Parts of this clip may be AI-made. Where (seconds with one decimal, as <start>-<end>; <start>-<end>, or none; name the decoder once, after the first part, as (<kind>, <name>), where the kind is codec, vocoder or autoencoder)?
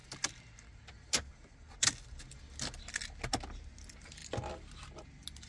none